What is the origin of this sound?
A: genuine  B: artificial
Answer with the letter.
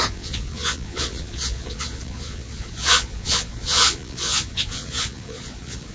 B